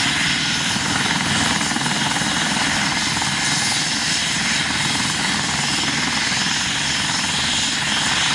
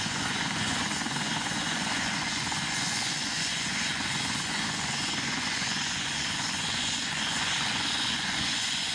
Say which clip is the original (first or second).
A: first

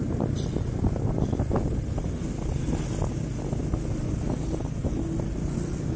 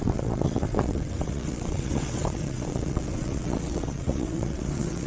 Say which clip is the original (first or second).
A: first